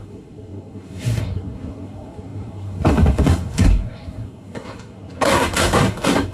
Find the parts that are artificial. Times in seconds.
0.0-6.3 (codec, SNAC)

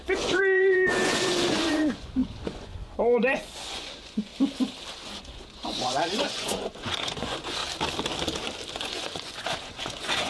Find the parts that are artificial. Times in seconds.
0.0-4.3 (vocoder, Vocos); 5.2-7.6; 8.7-10.3

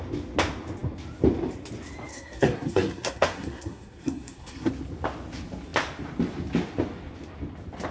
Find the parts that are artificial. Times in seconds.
2.1-4.7 (codec, SNAC)

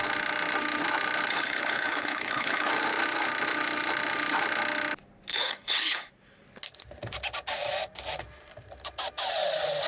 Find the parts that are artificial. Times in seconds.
1.3-2.7 (codec, HILCodec); 5.3-6.1

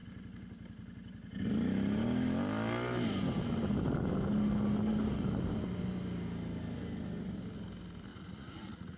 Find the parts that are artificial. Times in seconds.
8.1-9.0 (vocoder, Vocos)

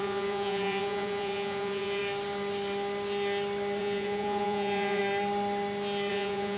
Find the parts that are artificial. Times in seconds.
0.0-2.0 (vocoder, Vocos); 3.8-5.0; 6.1-6.6